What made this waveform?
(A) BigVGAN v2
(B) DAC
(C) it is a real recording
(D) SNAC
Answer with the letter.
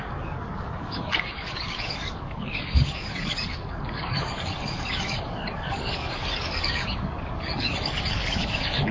B